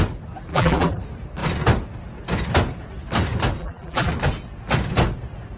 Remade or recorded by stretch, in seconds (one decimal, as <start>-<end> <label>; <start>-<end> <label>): 0.0-0.5 recorded; 0.5-1.0 remade; 1.0-3.6 recorded; 3.6-4.1 remade; 4.1-5.6 recorded